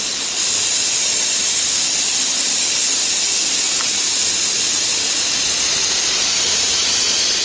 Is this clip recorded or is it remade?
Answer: recorded